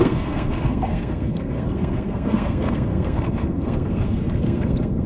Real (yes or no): no